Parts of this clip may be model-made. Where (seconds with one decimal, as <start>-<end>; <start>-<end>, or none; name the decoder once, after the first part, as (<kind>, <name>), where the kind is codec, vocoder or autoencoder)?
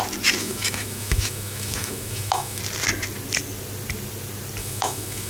0.4-2.6 (autoencoder, DAC-VAE); 4.6-5.3